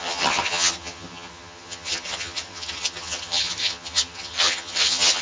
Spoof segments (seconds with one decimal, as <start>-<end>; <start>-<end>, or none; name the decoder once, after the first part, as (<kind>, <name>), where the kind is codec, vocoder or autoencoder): 0.0-5.2 (vocoder, HiFi-GAN)